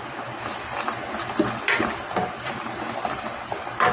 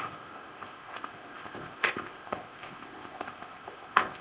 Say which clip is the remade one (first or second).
second